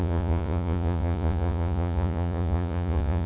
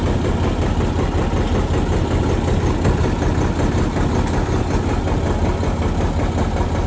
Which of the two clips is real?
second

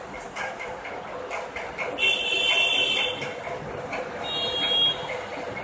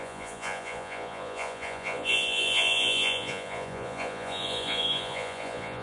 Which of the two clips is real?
first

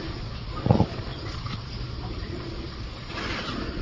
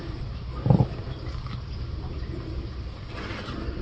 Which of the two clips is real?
second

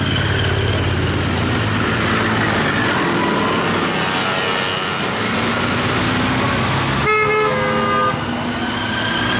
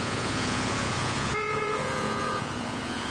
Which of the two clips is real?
first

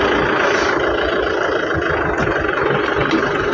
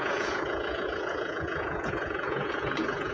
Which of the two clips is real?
first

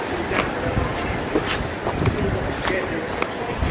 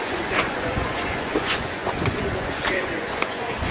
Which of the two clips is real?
first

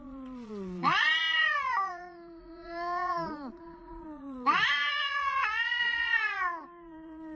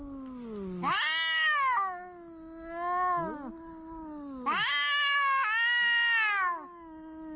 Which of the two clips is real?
second